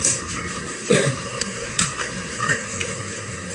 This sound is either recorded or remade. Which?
remade